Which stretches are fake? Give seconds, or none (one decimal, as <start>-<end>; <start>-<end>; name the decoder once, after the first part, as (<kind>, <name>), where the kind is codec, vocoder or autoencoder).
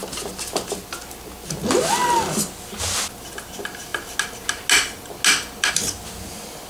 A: none